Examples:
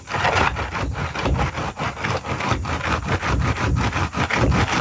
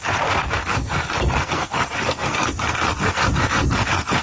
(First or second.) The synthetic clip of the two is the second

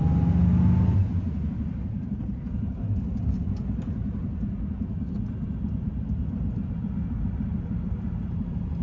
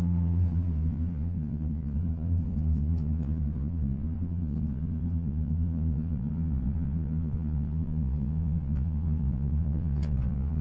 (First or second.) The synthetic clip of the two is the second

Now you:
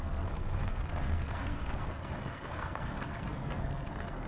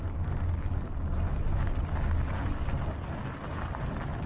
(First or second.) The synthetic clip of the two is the first